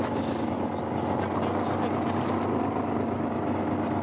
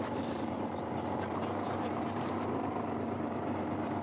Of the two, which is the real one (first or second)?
first